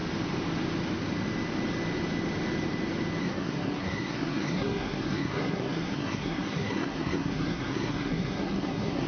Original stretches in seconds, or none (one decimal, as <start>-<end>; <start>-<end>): 0.0-3.2